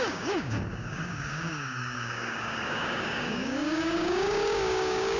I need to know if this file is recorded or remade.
remade